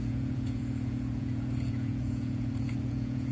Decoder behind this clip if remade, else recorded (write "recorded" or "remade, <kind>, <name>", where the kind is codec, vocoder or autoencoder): remade, vocoder, Vocos